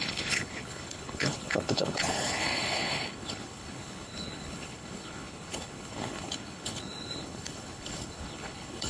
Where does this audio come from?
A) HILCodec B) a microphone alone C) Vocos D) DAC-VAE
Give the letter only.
A